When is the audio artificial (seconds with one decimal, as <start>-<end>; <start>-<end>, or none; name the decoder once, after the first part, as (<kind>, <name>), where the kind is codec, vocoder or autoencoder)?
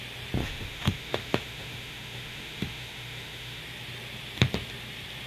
0.4-3.6 (autoencoder, DAC-VAE)